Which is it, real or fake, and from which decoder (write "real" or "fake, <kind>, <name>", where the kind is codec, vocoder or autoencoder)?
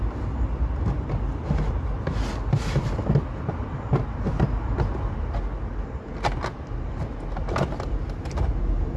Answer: real